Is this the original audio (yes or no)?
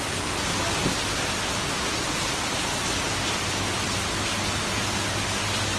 yes